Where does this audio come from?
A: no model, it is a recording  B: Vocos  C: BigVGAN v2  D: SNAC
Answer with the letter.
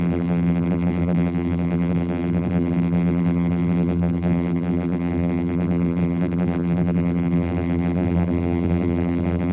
C